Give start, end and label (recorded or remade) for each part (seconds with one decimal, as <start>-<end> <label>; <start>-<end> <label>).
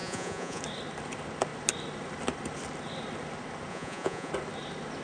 0.0-0.6 remade; 0.6-3.7 recorded; 3.7-4.3 remade; 4.3-5.0 recorded